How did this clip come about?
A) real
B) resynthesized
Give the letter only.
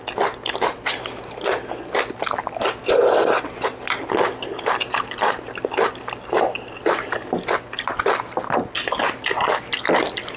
A